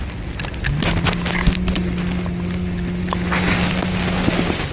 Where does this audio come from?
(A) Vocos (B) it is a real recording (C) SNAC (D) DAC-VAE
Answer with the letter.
B